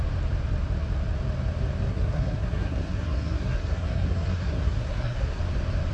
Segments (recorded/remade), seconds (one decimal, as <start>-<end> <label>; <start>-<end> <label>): 0.0-1.9 recorded; 1.9-5.4 remade; 5.4-5.9 recorded